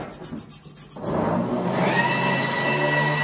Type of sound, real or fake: real